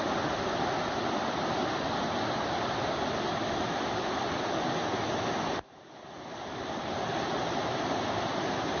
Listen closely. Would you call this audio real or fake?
real